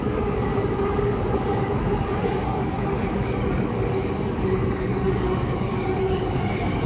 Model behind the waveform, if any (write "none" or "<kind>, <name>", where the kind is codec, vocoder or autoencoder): codec, DAC